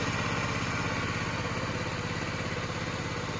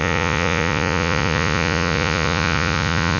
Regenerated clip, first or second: second